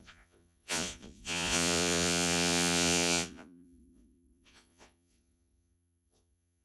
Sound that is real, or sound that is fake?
fake